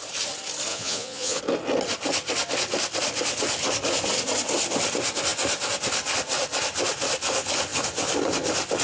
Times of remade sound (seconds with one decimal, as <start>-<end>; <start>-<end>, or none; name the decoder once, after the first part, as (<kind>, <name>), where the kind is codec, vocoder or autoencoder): 0.7-1.4 (vocoder, Vocos)